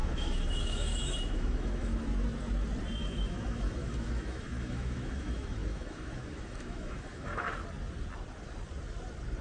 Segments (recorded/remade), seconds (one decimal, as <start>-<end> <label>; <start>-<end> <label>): 0.0-2.1 remade; 2.1-3.0 recorded; 3.0-7.5 remade; 7.5-9.4 recorded